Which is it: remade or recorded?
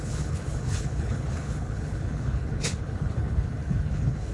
remade